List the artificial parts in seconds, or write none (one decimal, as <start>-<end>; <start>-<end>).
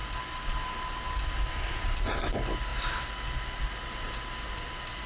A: none